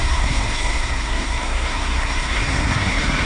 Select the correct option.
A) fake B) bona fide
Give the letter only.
A